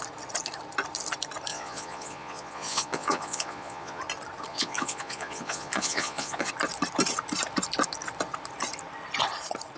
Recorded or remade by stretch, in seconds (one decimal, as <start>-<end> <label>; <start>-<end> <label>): 0.0-1.5 recorded; 1.5-4.0 remade; 4.0-4.5 recorded; 4.5-6.5 remade; 6.5-9.8 recorded